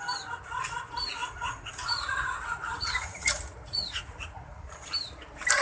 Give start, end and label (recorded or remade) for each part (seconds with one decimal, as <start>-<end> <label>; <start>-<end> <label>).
0.0-1.2 recorded; 1.2-4.6 remade; 4.6-5.6 recorded